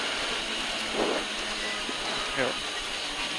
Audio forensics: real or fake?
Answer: real